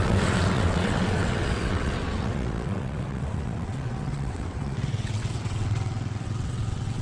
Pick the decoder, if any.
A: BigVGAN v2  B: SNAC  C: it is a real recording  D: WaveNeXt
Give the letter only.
D